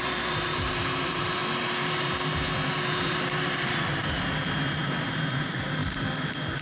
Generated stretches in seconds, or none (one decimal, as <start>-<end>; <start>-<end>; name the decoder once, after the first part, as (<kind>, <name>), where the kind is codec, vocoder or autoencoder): 0.0-1.4 (vocoder, BigVGAN v2); 4.8-6.6